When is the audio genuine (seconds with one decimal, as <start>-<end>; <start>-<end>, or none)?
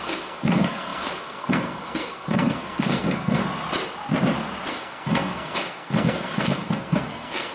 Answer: 3.4-4.7